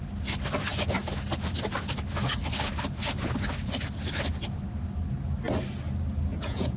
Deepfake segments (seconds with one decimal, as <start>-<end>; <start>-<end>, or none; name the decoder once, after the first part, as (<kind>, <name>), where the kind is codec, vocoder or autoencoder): 6.3-6.8 (vocoder, Vocos)